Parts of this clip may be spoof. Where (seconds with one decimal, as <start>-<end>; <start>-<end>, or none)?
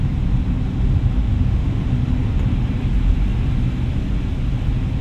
1.2-1.8